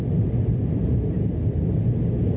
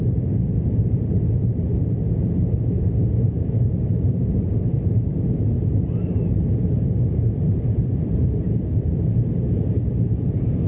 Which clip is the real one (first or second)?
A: first